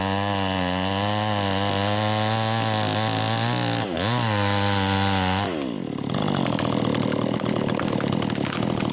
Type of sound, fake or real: real